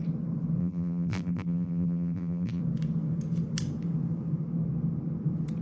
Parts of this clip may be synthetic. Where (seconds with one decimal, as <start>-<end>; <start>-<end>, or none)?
0.6-2.6

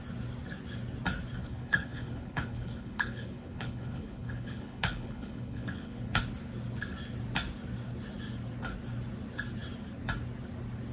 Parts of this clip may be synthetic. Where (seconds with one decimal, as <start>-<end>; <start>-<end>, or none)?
1.4-6.2